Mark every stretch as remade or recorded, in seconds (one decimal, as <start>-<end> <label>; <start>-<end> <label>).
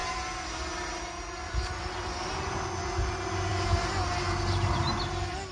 0.0-5.5 recorded